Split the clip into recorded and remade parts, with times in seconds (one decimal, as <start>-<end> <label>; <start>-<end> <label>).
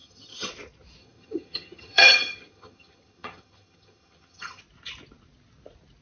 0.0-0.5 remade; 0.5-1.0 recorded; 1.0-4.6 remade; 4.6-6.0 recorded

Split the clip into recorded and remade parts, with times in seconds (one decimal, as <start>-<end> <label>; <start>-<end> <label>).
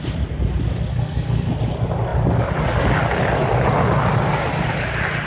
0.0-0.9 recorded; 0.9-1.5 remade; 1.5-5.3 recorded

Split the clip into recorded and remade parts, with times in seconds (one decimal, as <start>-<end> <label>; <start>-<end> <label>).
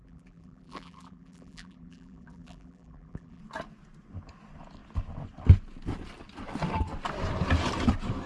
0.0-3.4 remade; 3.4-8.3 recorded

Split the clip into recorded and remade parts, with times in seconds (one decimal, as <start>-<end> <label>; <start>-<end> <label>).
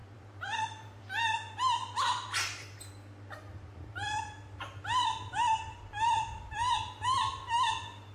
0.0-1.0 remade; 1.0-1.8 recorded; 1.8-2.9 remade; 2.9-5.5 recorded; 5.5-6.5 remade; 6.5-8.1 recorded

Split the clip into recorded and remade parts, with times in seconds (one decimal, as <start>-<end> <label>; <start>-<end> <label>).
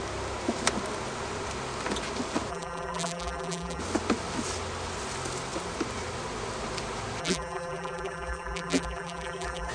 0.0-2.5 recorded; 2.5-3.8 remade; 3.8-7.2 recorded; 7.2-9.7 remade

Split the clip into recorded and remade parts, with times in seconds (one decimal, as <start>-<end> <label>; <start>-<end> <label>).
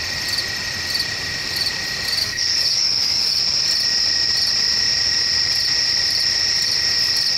0.0-2.2 recorded; 2.2-3.4 remade; 3.4-7.4 recorded